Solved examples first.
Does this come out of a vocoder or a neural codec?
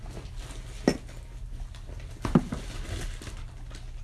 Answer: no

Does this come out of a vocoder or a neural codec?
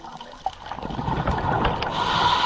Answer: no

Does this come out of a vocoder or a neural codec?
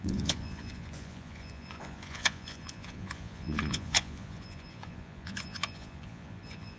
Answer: yes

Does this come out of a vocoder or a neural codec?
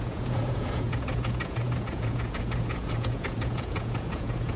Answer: yes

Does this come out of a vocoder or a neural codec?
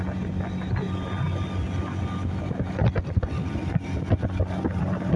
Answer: no